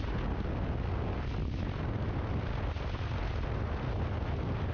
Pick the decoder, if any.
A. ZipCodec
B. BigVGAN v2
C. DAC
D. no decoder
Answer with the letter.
D